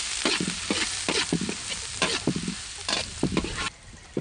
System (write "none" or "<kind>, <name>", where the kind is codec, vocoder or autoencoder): none